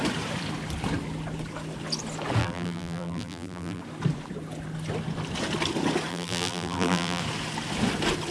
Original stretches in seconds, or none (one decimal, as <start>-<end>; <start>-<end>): 0.0-2.4; 3.8-6.1; 7.2-8.3